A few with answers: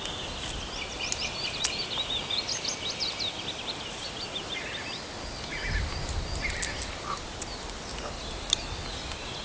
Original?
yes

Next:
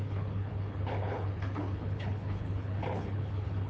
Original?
no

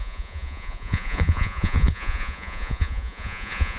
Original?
no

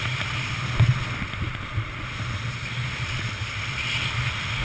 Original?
yes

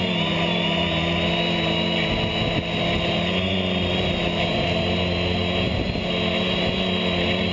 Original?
yes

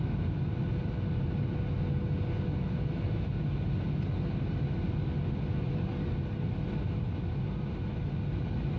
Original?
yes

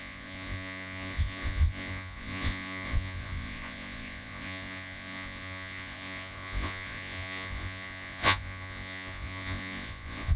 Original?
no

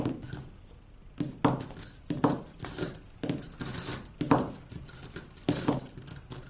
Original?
yes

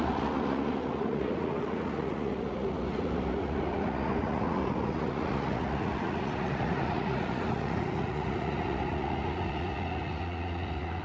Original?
no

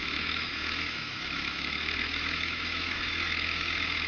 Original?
no